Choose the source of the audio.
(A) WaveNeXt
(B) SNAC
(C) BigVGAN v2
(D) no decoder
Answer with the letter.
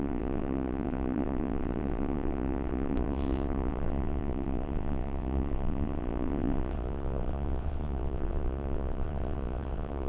A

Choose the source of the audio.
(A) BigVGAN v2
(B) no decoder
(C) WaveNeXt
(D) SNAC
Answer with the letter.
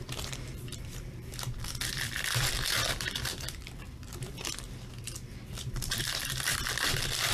A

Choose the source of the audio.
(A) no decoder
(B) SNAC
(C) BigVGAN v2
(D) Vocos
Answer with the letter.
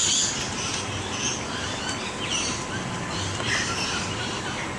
A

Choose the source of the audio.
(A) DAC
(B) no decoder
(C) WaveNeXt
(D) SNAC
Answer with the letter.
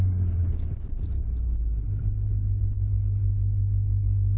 B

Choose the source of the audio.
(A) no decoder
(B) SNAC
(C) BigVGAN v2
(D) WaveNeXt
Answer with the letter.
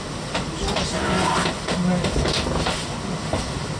A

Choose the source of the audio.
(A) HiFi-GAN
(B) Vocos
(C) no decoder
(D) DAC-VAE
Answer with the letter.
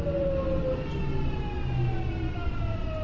C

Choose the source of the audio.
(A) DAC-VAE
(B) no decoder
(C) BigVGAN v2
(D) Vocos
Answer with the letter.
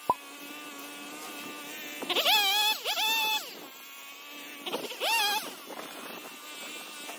B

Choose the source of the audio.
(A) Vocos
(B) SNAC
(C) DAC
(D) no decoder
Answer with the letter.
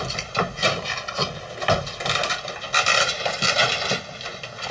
D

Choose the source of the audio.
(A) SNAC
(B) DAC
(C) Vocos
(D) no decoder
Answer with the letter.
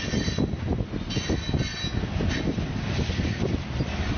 D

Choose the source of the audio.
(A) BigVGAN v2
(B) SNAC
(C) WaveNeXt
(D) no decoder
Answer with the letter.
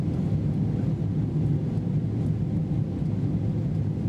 D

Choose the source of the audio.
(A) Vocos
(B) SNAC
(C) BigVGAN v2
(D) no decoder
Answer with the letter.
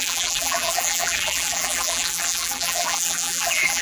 C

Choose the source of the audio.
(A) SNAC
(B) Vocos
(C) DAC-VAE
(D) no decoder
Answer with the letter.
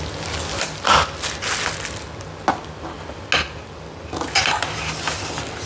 D